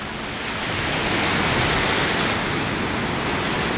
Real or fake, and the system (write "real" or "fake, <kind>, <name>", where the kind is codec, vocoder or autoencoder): real